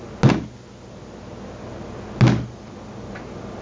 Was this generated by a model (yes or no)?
no